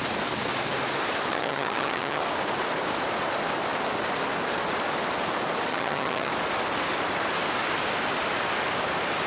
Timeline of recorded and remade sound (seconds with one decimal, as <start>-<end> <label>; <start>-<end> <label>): 0.0-1.3 recorded; 1.3-2.2 remade; 2.2-5.7 recorded; 5.7-6.3 remade; 6.3-9.3 recorded